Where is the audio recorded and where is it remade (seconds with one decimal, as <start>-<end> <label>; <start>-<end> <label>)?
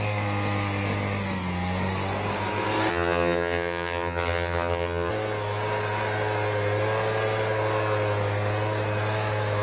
0.0-2.9 recorded; 2.9-5.1 remade; 5.1-9.6 recorded